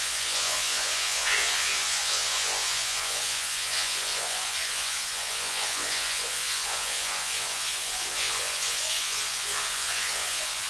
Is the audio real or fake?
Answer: fake